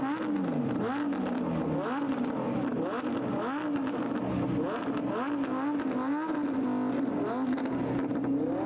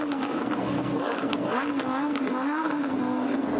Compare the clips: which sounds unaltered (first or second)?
first